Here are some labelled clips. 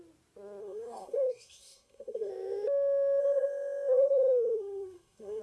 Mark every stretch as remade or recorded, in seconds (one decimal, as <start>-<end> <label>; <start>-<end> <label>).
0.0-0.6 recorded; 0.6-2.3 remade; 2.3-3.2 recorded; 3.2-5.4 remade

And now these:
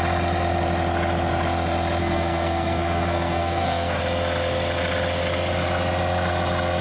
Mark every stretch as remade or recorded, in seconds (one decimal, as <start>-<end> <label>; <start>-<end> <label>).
0.0-2.0 recorded; 2.0-4.0 remade; 4.0-6.8 recorded

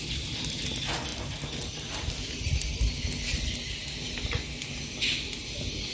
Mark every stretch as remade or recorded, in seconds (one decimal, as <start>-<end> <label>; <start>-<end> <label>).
0.0-5.9 recorded